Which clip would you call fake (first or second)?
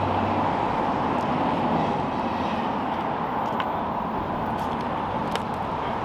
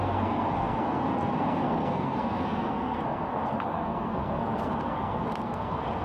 second